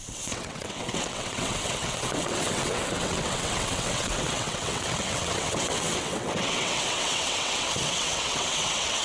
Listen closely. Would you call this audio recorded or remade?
remade